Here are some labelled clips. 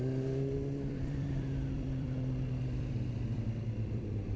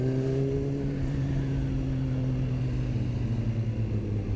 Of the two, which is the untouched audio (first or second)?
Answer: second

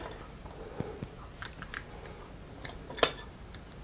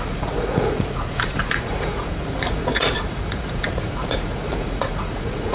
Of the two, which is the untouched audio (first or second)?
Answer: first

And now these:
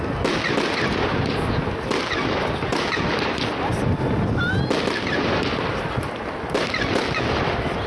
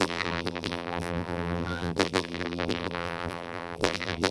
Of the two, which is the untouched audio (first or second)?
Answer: first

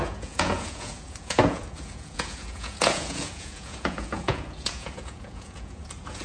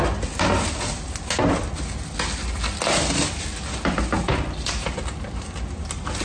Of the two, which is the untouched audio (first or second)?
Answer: second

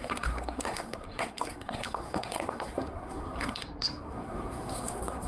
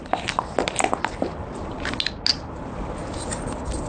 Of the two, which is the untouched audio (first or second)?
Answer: second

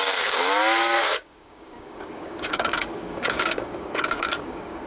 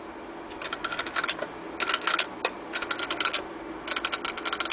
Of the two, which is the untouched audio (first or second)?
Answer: second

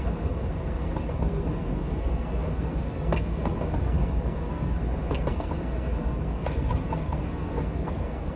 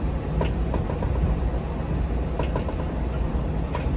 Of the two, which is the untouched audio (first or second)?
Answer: second